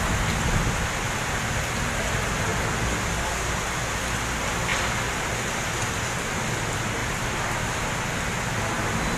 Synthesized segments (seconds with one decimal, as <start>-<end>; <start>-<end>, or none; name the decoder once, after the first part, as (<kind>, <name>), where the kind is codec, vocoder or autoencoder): 2.5-3.3 (vocoder, BigVGAN v2); 7.0-7.8